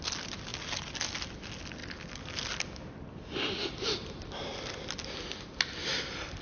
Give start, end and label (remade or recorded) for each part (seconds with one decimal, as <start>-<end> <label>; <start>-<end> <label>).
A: 0.0-6.4 recorded

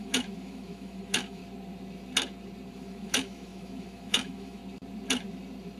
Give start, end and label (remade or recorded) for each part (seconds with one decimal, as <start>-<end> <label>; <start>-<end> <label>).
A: 0.0-1.4 remade; 1.4-2.7 recorded; 2.7-4.6 remade; 4.6-5.8 recorded